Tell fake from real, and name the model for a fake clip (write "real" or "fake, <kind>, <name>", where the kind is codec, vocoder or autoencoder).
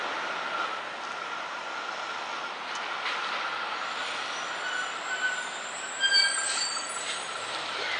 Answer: real